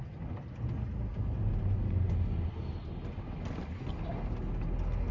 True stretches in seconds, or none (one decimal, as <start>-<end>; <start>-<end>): 0.0-5.1